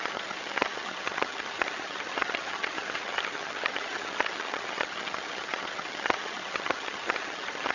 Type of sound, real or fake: fake